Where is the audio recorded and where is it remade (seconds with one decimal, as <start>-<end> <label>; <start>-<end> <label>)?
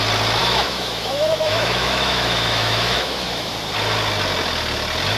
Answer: 0.0-0.4 recorded; 0.4-3.5 remade; 3.5-5.2 recorded